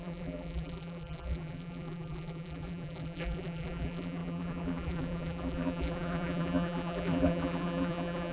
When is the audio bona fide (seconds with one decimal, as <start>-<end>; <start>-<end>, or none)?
none